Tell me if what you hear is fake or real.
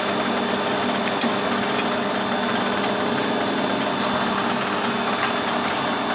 real